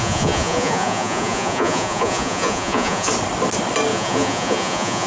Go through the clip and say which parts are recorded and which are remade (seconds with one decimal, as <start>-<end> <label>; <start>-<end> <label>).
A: 0.0-3.1 remade; 3.1-3.9 recorded; 3.9-5.1 remade